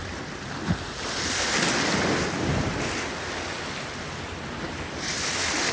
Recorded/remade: recorded